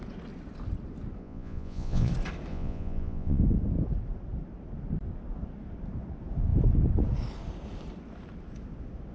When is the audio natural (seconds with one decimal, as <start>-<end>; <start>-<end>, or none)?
0.0-1.2; 2.1-2.5; 3.4-9.1